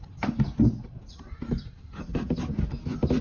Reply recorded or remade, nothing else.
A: recorded